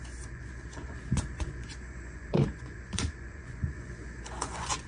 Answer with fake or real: fake